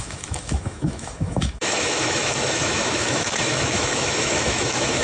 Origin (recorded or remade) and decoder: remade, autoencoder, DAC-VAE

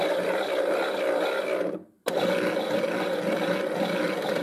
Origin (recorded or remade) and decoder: recorded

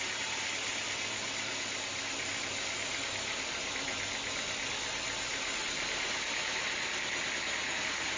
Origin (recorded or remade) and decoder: recorded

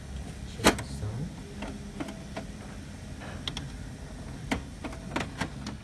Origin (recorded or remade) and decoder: recorded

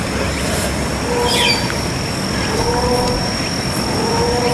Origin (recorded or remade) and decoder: recorded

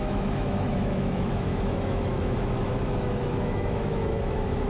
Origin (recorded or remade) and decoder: remade, autoencoder, DAC-VAE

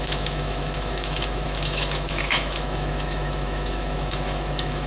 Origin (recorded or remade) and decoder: remade, autoencoder, DAC-VAE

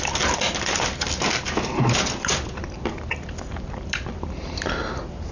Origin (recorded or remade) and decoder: recorded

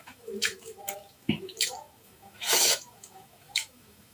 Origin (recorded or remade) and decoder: remade, autoencoder, DAC-VAE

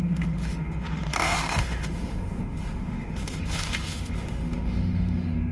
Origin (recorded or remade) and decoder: remade, autoencoder, DAC-VAE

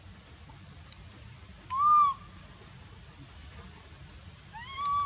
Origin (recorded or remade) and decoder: recorded